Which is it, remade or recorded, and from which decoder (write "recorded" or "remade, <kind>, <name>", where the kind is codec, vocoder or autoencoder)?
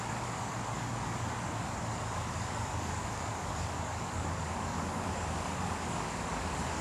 remade, codec, DAC